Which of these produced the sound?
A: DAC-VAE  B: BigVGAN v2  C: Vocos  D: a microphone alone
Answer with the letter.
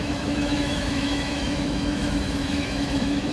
A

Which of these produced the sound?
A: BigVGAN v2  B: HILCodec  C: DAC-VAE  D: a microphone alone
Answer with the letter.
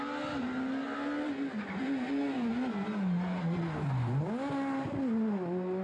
D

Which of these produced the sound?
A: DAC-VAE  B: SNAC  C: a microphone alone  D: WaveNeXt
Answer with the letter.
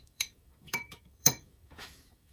A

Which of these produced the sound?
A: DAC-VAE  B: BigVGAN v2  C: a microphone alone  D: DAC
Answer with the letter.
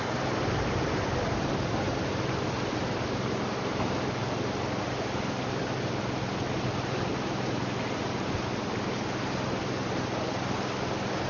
C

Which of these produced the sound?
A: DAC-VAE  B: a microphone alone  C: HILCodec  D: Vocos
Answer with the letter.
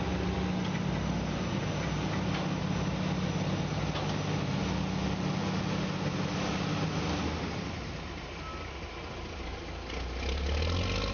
B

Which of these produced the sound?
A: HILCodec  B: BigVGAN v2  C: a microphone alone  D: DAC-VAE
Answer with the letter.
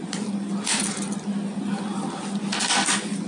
C